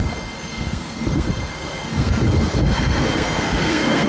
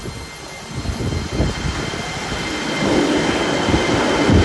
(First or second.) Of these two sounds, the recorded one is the second